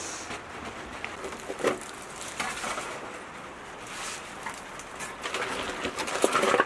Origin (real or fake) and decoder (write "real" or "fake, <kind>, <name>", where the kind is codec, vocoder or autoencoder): real